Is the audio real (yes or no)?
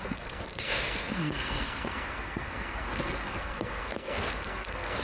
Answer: no